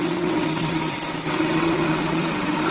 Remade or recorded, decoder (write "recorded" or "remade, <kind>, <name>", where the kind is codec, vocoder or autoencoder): remade, vocoder, WaveNeXt